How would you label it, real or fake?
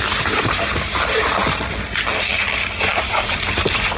real